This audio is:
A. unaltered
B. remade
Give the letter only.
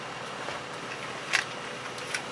A